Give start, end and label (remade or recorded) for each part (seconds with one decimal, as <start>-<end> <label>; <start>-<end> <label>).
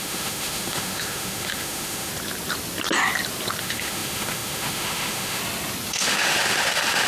0.0-2.1 remade; 2.1-3.6 recorded; 3.6-5.4 remade; 5.4-5.9 recorded; 5.9-7.1 remade